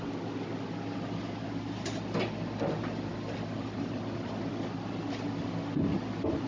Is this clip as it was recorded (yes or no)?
yes